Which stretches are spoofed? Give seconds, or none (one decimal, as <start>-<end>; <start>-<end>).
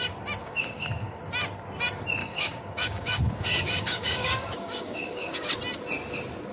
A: 0.4-1.2; 2.2-5.5